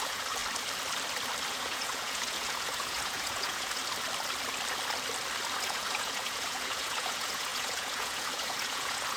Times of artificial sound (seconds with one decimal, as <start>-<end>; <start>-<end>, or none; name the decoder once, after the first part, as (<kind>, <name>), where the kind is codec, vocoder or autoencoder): 0.0-0.4 (vocoder, Vocos); 1.5-3.8; 5.6-9.2